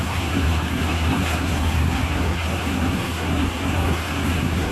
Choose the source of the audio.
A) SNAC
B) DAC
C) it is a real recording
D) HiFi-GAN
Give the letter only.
A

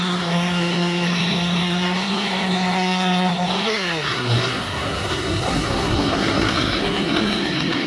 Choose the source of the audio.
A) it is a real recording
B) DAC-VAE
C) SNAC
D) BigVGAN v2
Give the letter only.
C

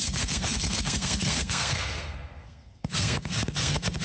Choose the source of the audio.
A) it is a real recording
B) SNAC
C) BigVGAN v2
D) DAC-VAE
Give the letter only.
B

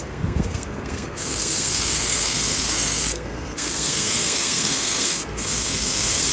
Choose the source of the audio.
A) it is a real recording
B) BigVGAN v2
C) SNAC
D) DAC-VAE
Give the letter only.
C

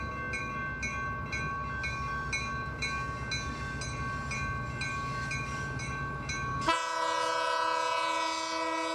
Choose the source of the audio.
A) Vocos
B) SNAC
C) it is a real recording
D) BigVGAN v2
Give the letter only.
C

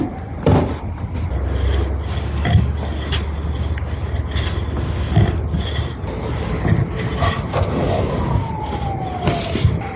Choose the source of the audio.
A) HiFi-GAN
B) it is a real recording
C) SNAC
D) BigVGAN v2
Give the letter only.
B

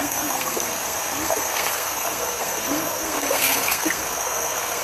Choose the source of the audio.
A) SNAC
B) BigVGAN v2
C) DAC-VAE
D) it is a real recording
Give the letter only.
A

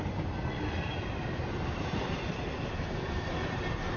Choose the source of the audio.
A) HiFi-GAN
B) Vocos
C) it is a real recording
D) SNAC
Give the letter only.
C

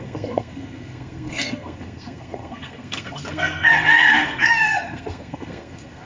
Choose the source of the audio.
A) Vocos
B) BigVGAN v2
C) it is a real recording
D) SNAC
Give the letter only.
D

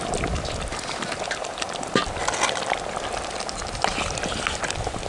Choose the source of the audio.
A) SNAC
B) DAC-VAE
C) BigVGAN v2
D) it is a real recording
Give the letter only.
D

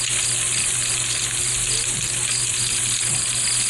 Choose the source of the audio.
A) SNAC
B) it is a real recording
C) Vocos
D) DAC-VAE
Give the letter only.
B